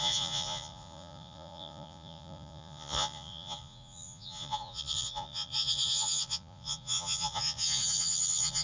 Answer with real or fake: fake